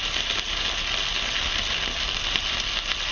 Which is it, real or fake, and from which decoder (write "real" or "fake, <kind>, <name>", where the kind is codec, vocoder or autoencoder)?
real